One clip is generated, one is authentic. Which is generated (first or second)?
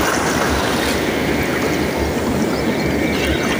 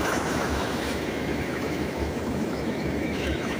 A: second